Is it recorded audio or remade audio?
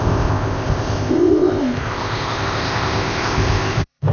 remade